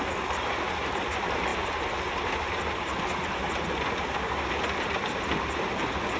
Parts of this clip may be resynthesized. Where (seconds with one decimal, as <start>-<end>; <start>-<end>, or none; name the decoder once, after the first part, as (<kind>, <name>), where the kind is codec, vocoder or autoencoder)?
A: none